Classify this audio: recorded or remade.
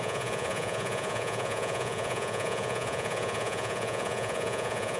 remade